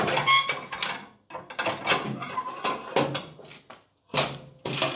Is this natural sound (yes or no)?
yes